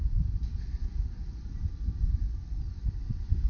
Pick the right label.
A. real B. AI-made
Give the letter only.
A